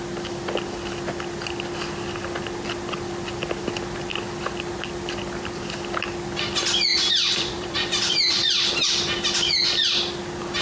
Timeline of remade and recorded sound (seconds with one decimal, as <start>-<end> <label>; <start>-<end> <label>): 0.0-6.9 recorded; 6.9-8.7 remade; 8.7-10.6 recorded

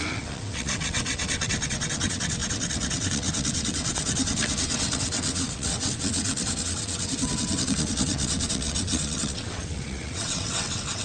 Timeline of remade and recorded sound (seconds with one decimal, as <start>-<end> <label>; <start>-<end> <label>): 0.0-11.0 remade

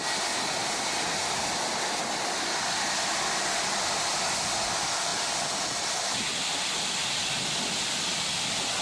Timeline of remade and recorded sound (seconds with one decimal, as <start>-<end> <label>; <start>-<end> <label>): 0.0-8.8 recorded

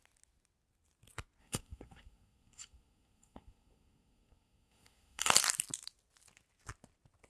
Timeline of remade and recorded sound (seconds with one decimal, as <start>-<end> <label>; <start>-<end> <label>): 0.0-1.4 recorded; 1.4-5.3 remade; 5.3-7.3 recorded

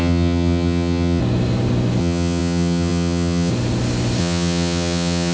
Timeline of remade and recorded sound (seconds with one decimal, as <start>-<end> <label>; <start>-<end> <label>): 0.0-1.2 remade; 1.2-2.0 recorded; 2.0-3.5 remade; 3.5-4.2 recorded; 4.2-5.3 remade

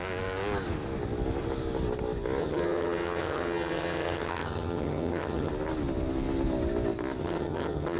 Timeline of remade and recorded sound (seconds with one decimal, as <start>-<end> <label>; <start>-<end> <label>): 0.0-2.4 recorded; 2.4-5.5 remade; 5.5-7.2 recorded; 7.2-8.0 remade

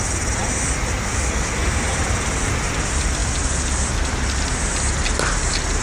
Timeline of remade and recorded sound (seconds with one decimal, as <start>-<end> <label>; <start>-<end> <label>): 0.0-5.8 recorded